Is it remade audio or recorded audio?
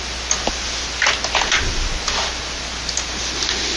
recorded